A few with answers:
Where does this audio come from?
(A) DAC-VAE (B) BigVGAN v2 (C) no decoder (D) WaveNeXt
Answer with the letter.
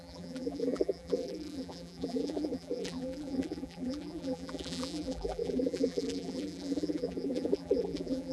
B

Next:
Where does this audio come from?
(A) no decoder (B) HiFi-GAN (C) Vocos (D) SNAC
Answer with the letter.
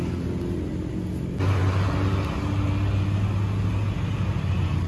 A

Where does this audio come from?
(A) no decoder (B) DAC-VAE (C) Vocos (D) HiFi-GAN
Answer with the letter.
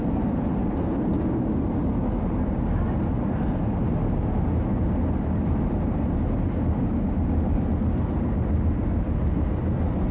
A